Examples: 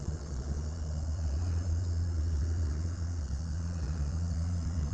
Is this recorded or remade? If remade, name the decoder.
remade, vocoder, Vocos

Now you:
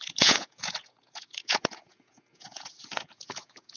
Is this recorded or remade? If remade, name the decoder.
remade, vocoder, Vocos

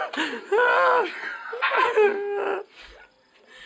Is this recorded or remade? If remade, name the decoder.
recorded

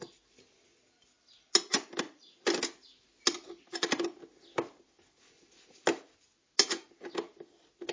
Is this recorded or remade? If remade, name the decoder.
recorded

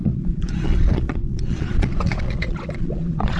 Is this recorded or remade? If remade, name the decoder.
remade, vocoder, Vocos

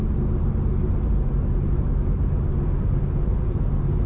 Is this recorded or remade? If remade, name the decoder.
recorded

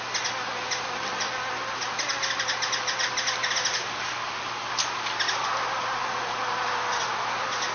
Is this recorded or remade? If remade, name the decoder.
recorded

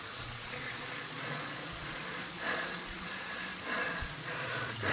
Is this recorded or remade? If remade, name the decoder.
remade, vocoder, Vocos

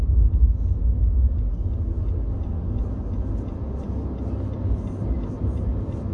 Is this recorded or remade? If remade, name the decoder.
recorded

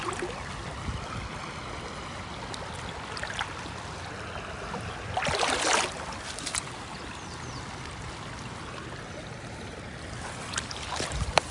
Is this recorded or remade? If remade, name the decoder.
recorded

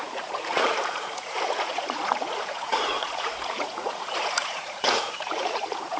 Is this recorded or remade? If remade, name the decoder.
remade, vocoder, Vocos